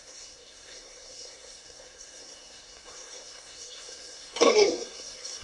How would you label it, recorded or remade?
remade